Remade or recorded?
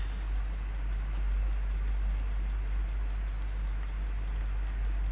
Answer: recorded